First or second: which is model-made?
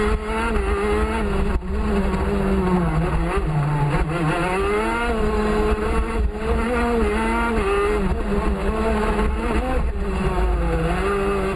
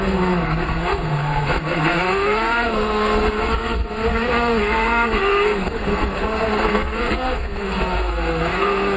second